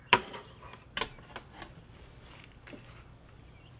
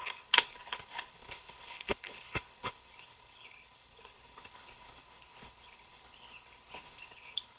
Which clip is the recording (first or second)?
first